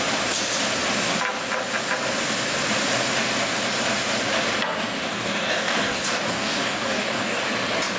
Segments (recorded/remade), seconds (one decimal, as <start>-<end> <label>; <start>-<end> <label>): 0.0-5.1 recorded; 5.1-7.5 remade; 7.5-8.0 recorded